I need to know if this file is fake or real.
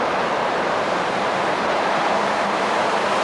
fake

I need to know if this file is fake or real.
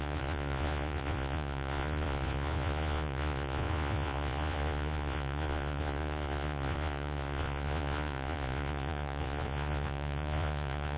fake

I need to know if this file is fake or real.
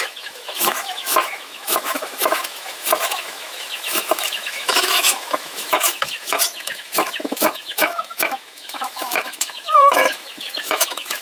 fake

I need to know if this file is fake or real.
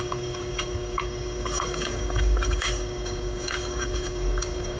fake